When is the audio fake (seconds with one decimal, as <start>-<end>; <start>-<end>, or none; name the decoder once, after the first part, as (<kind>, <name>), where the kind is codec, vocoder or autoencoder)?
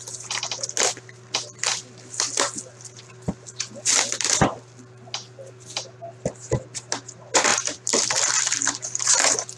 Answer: none